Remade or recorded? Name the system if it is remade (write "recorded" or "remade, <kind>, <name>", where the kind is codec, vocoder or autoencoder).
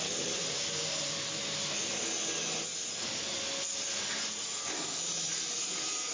recorded